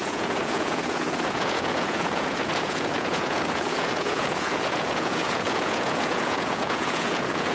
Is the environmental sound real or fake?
fake